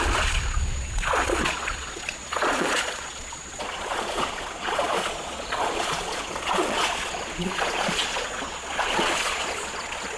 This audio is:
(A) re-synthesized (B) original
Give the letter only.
A